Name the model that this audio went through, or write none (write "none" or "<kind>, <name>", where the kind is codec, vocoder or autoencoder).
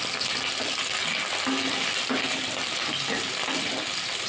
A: none